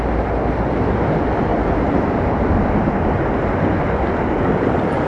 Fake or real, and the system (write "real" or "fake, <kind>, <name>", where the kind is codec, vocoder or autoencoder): real